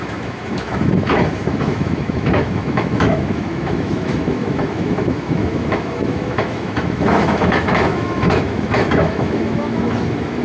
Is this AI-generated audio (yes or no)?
yes